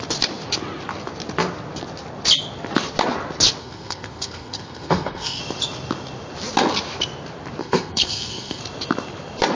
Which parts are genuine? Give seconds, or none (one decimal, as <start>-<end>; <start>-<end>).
0.0-3.6; 5.4-7.6; 8.6-9.5